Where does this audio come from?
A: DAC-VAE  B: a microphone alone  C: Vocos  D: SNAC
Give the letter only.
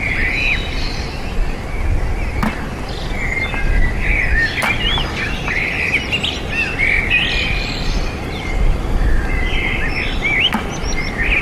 B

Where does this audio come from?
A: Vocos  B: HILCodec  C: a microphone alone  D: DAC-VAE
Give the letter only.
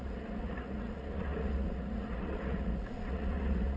A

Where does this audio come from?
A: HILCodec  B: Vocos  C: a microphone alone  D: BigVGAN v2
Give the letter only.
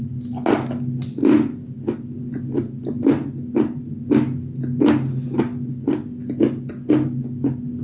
C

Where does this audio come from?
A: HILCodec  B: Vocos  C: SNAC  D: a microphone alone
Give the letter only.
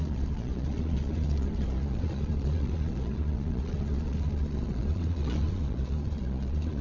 B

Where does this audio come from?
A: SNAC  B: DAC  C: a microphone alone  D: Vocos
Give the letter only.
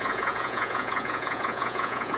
D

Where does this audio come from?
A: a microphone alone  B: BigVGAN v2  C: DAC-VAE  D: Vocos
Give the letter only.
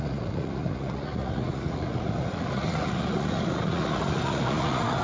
D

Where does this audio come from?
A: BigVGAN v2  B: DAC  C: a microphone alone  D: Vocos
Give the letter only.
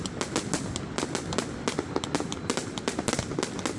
C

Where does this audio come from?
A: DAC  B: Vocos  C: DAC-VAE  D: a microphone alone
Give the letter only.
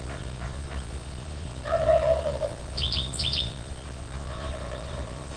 B